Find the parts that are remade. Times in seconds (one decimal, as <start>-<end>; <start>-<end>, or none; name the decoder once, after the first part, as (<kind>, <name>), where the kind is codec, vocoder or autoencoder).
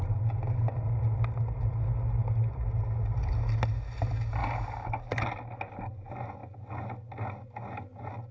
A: none